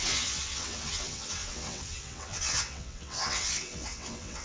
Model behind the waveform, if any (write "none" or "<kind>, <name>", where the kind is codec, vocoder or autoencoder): vocoder, WaveNeXt